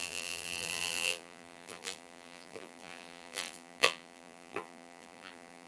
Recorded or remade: remade